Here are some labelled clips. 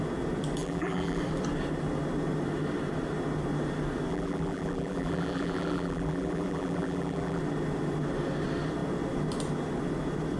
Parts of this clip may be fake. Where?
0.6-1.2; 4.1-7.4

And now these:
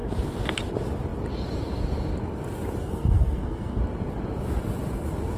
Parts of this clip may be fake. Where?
2.8-3.8